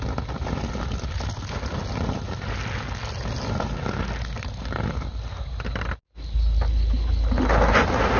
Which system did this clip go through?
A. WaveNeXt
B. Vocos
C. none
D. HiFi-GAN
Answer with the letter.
C